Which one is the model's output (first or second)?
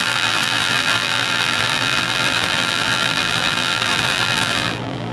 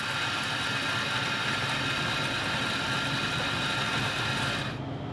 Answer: first